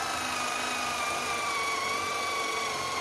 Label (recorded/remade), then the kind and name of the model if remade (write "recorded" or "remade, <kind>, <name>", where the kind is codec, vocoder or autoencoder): recorded